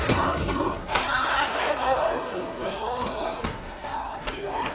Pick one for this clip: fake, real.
fake